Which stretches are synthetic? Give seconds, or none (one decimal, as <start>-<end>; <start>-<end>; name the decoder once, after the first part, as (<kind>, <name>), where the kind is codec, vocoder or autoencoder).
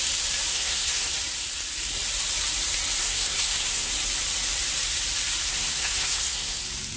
0.5-1.1 (codec, SNAC); 3.0-3.9; 5.5-6.6